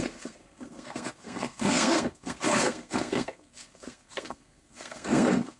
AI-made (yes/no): yes